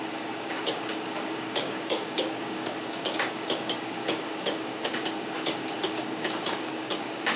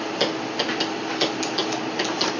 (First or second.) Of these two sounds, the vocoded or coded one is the first